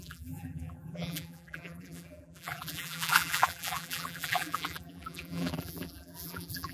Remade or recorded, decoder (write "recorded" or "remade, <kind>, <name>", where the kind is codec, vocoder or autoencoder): remade, vocoder, BigVGAN v2